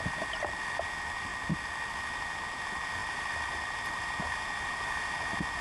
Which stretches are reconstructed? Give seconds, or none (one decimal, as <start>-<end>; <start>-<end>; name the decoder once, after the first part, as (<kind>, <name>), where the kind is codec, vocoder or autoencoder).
3.0-3.5 (vocoder, BigVGAN v2)